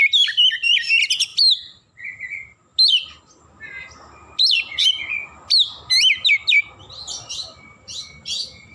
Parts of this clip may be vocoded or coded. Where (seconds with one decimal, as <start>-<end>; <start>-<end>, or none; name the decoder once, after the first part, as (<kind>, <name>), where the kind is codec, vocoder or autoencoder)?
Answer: none